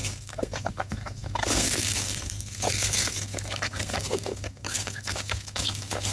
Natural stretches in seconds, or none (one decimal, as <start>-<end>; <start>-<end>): none